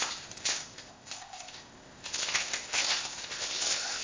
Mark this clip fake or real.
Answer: fake